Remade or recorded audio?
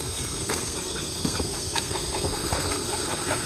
remade